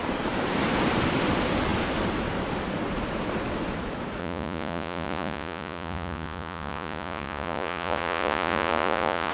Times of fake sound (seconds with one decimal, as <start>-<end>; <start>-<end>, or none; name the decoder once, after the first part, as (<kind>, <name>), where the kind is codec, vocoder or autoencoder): 4.2-9.3 (vocoder, Vocos)